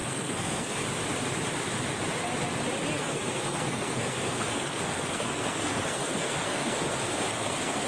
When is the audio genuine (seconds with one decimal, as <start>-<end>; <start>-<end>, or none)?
0.7-3.0